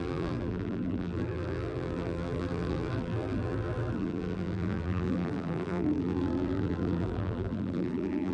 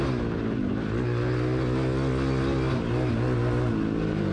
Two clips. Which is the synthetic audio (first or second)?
first